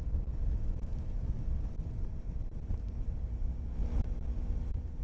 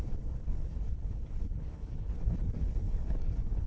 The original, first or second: first